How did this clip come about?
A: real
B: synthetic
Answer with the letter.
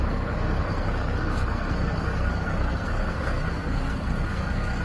B